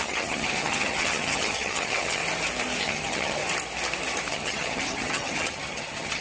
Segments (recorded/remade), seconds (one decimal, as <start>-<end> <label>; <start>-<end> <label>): 0.0-2.2 remade; 2.2-2.8 recorded; 2.8-3.4 remade; 3.4-4.3 recorded; 4.3-6.2 remade